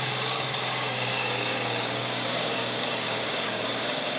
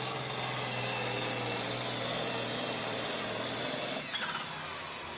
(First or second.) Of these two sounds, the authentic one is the second